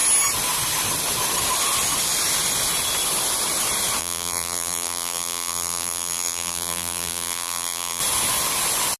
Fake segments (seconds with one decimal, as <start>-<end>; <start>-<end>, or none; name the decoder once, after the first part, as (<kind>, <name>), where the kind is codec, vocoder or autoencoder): 4.0-8.0 (vocoder, BigVGAN v2)